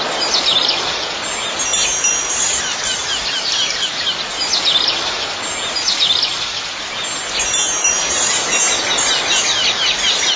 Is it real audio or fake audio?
real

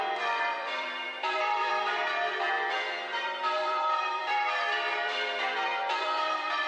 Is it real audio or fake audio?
fake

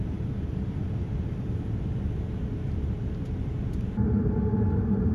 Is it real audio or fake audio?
fake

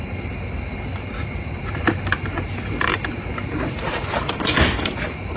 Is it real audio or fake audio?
fake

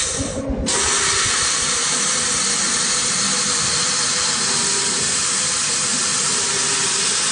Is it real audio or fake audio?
real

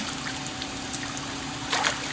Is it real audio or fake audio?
fake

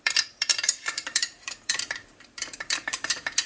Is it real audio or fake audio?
fake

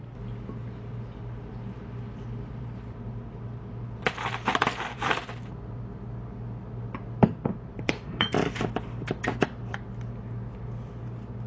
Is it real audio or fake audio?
fake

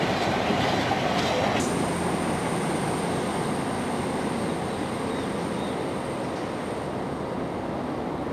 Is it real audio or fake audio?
real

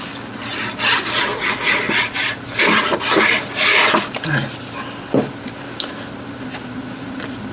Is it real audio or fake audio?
real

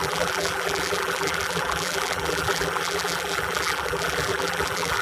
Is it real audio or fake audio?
fake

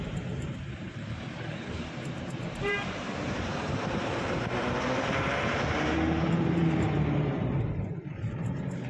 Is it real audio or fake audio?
fake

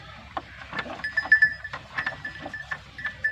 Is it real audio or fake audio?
fake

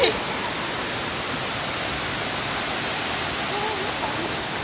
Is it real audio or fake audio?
real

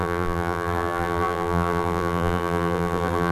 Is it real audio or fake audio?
fake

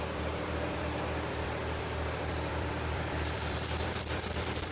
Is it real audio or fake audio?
fake